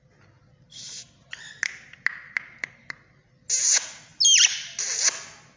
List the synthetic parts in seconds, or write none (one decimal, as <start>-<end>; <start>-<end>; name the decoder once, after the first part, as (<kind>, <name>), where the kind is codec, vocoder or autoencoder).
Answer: none